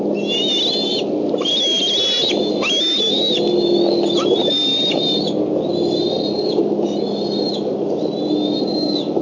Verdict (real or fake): real